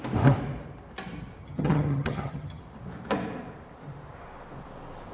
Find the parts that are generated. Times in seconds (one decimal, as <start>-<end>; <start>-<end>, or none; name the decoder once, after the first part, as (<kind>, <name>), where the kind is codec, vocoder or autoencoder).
1.4-2.6 (vocoder, HiFi-GAN)